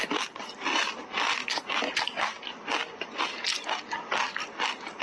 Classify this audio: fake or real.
real